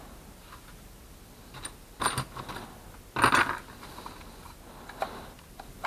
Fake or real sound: real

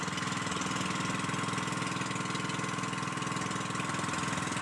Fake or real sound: real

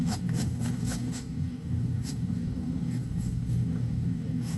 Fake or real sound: fake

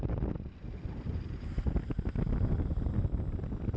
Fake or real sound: real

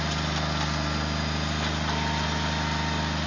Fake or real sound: real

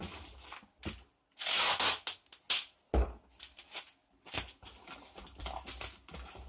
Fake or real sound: real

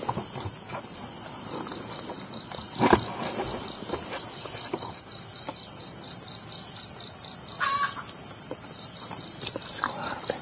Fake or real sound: real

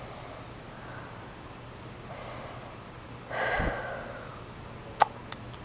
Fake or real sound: real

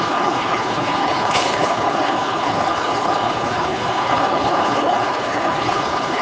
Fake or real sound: fake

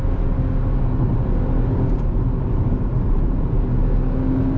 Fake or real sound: real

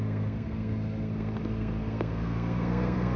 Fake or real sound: fake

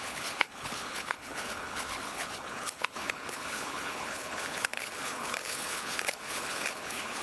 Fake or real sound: fake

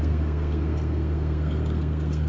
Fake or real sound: fake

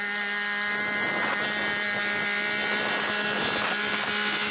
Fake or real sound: real